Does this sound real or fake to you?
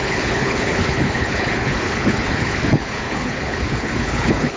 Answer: fake